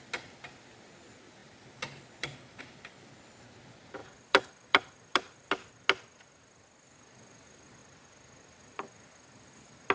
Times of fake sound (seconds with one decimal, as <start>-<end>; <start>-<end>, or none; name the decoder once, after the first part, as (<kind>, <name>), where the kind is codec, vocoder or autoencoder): 1.4-2.6 (vocoder, BigVGAN v2); 4.0-5.5